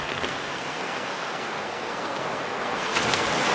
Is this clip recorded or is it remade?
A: remade